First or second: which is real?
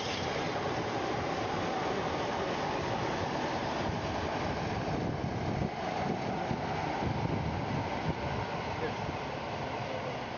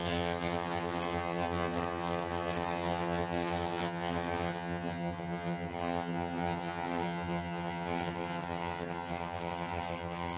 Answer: first